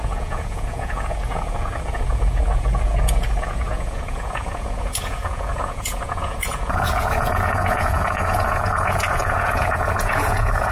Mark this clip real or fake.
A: fake